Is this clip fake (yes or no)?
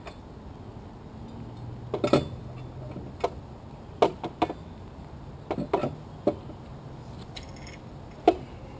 no